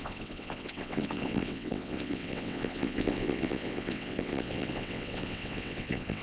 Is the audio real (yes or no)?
no